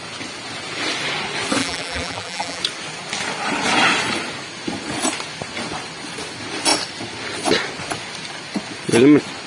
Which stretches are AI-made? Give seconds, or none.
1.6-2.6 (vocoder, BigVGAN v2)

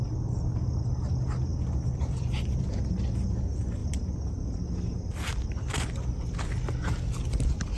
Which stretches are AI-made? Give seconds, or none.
1.5-2.8 (vocoder, BigVGAN v2)

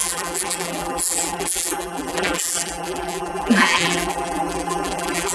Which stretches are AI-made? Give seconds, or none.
0.0-5.3 (vocoder, BigVGAN v2)